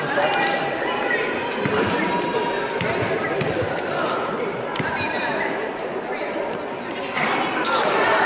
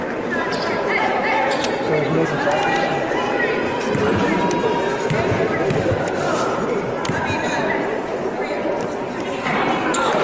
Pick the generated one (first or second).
first